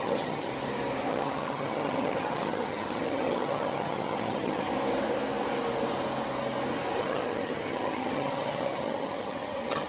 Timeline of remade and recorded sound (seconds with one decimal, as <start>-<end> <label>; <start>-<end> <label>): 0.0-0.5 remade; 0.5-1.1 recorded; 1.1-4.7 remade; 4.7-7.0 recorded; 7.0-9.9 remade